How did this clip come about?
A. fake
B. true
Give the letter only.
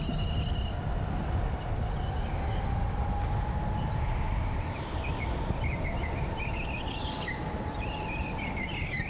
B